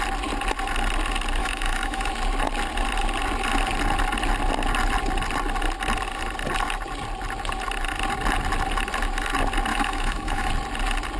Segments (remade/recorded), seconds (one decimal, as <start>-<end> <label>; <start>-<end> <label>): 0.0-1.4 recorded; 1.4-2.1 remade; 2.1-9.7 recorded; 9.7-10.5 remade; 10.5-11.2 recorded